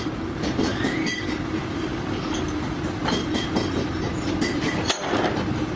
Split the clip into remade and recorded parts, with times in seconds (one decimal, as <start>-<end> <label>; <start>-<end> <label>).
0.0-0.7 recorded; 0.7-1.3 remade; 1.3-1.9 recorded; 1.9-2.4 remade; 2.4-5.8 recorded